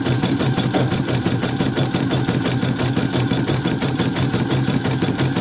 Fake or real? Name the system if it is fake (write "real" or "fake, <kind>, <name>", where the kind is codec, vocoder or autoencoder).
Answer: fake, vocoder, BigVGAN v2